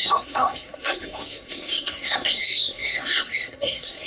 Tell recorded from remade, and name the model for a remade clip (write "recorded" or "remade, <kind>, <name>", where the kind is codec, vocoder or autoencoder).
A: remade, codec, SNAC